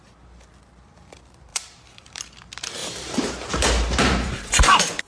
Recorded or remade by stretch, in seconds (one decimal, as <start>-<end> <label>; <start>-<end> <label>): 0.0-1.5 recorded; 1.5-2.2 remade; 2.2-2.8 recorded; 2.8-5.1 remade